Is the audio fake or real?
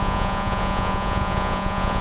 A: fake